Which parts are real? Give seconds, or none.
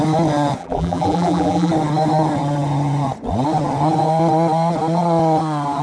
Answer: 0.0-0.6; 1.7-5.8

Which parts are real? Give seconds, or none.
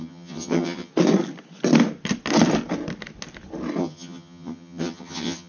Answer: 0.9-3.8